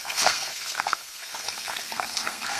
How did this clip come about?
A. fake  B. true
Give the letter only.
A